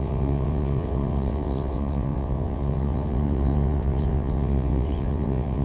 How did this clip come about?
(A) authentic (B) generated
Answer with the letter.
B